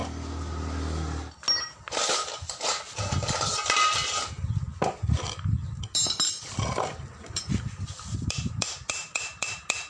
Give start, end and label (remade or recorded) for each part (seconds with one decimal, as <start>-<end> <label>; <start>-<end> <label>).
0.0-1.9 recorded; 1.9-4.0 remade; 4.0-7.7 recorded; 7.7-9.9 remade